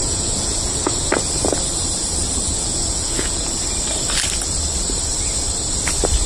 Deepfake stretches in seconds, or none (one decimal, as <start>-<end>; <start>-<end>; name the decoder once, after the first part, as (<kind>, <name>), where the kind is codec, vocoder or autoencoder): 0.0-1.1 (vocoder, Vocos); 2.5-3.5